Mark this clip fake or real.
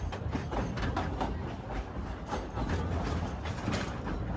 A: real